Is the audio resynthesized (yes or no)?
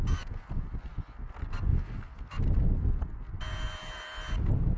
no